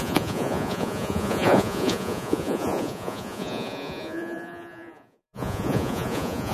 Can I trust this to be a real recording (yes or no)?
no